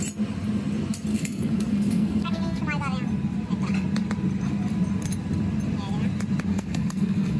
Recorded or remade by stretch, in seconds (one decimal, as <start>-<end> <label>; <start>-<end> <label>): 0.0-1.1 recorded; 1.1-2.6 remade; 2.6-6.5 recorded; 6.5-7.4 remade